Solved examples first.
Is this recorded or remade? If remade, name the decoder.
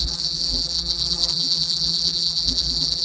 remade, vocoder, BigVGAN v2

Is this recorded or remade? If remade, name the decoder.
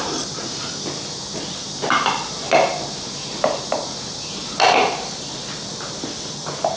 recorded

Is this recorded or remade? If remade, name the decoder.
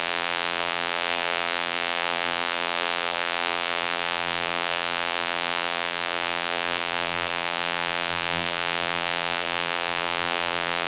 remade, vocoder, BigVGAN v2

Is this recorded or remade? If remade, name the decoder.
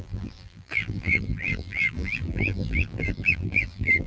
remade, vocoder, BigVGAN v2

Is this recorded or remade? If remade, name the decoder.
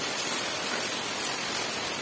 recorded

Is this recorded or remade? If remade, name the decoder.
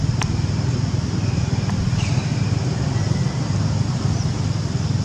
recorded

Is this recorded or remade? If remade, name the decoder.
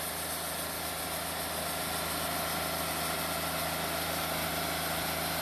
recorded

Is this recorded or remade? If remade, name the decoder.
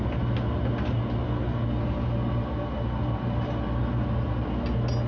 recorded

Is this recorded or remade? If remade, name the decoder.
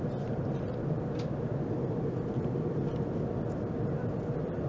recorded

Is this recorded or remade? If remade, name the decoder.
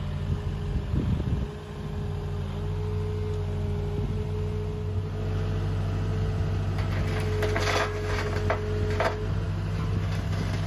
recorded